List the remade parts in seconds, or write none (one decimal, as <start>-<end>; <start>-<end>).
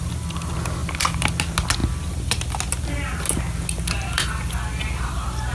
none